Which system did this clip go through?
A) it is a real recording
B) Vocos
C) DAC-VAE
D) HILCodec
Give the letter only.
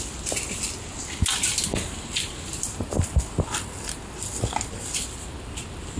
A